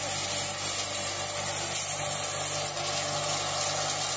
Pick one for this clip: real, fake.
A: real